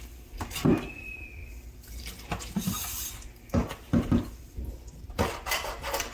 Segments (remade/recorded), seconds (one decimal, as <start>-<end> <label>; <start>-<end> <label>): 0.0-6.1 recorded